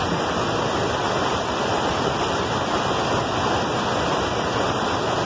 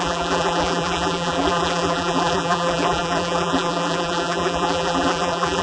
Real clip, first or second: first